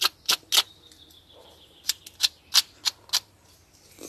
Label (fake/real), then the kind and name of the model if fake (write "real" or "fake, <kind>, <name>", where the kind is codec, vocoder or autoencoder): real